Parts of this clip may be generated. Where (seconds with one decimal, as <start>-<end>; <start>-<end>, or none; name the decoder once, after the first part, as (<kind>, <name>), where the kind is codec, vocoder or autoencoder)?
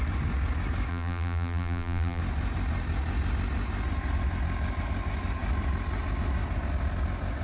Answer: 0.9-2.2 (vocoder, BigVGAN v2)